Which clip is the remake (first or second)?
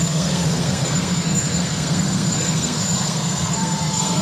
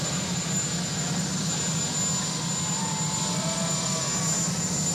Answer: first